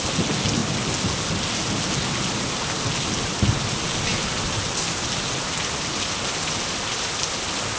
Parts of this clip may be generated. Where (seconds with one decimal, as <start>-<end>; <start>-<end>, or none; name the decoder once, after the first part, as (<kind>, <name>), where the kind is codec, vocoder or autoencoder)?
none